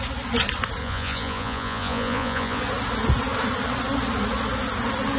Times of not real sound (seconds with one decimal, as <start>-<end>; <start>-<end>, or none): 0.8-2.6